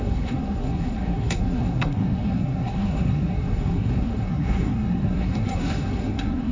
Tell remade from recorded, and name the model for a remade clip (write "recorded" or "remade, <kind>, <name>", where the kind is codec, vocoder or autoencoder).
remade, codec, SNAC